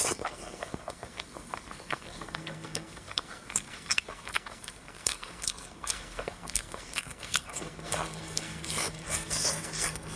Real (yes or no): no